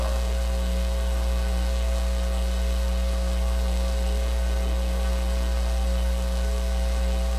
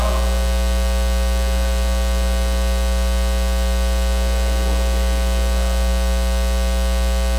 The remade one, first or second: first